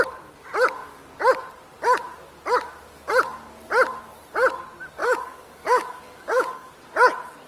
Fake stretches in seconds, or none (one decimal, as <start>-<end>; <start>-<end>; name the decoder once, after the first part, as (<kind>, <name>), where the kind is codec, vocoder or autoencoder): 5.0-6.7 (codec, DAC)